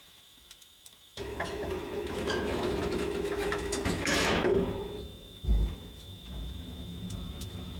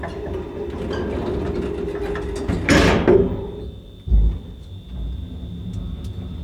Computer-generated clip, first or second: first